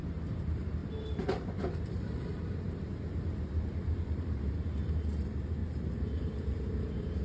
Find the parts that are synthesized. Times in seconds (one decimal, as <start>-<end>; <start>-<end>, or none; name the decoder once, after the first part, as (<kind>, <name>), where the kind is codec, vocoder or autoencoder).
0.0-2.9 (vocoder, BigVGAN v2); 3.4-7.2